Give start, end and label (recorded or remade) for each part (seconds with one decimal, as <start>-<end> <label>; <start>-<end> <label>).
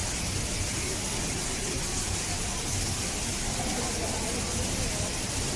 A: 0.0-5.6 recorded